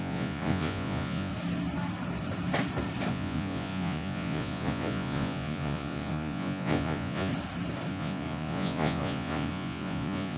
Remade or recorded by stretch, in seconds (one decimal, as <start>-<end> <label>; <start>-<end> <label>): 0.0-1.3 remade; 1.3-3.1 recorded; 3.1-7.3 remade; 7.3-7.9 recorded; 7.9-10.4 remade